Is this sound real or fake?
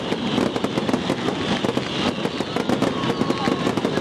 real